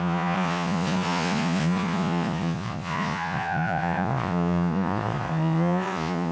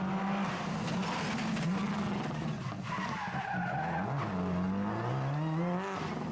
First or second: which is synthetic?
first